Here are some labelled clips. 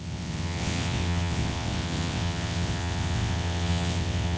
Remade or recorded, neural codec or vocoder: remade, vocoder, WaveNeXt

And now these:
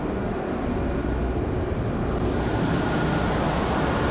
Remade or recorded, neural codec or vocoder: recorded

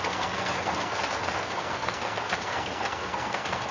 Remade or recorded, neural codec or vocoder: remade, codec, SNAC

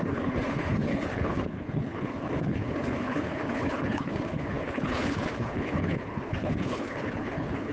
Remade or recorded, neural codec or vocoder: remade, codec, HILCodec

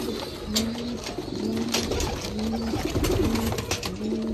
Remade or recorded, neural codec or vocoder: recorded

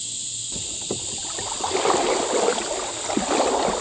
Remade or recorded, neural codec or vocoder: recorded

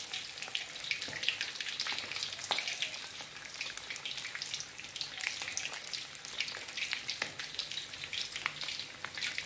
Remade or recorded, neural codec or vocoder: recorded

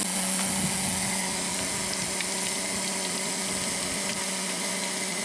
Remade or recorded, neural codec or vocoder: recorded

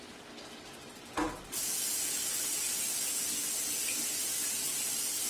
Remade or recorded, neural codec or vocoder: recorded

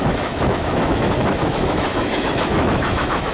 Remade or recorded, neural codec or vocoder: remade, autoencoder, DAC-VAE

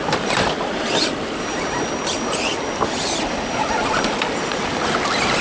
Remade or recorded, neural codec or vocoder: recorded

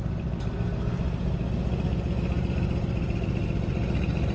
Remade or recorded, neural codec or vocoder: recorded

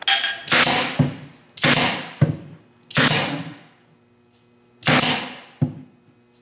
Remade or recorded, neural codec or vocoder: recorded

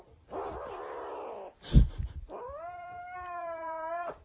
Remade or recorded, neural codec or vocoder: remade, vocoder, BigVGAN v2